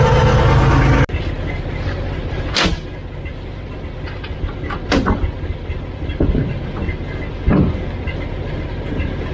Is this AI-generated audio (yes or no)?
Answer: no